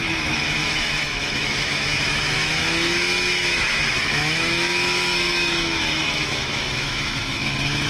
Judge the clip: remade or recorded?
remade